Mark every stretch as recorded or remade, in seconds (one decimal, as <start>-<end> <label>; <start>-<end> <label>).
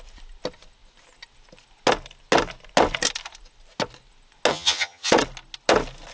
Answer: 0.0-4.5 recorded; 4.5-5.1 remade; 5.1-6.1 recorded